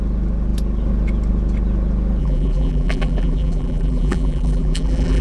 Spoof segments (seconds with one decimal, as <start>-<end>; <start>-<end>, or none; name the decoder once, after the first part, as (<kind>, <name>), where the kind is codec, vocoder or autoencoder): 2.2-5.2 (vocoder, BigVGAN v2)